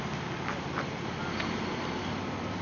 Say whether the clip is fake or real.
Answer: real